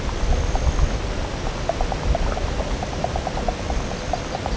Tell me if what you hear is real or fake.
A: real